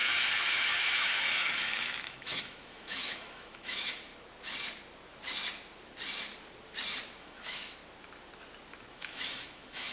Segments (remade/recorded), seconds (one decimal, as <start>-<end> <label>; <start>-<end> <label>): 0.0-4.1 remade; 4.1-7.2 recorded; 7.2-7.8 remade; 7.8-8.9 recorded; 8.9-9.9 remade